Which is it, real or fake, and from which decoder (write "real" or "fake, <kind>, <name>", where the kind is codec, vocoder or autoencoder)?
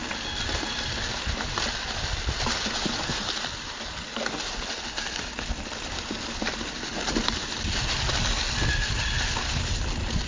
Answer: real